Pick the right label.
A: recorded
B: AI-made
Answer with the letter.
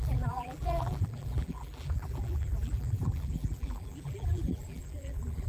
B